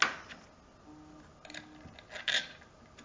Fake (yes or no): no